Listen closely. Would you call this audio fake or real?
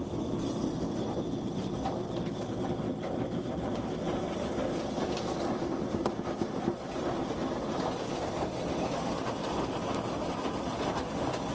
real